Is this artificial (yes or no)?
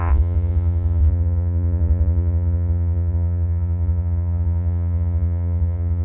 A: yes